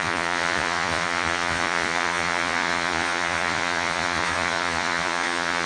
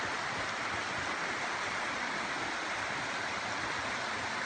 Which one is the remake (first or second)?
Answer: first